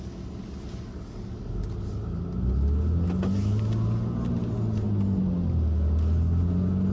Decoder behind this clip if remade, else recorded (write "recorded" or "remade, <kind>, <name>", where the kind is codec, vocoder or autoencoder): recorded